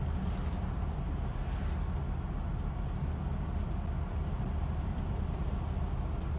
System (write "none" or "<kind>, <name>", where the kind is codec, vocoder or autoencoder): none